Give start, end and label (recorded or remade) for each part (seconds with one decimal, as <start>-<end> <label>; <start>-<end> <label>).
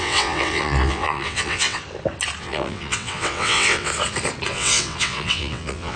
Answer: 0.0-1.8 remade; 1.8-2.4 recorded; 2.4-3.9 remade; 3.9-4.5 recorded; 4.5-6.0 remade